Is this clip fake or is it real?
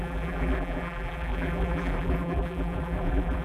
fake